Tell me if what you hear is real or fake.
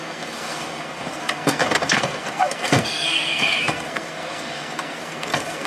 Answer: fake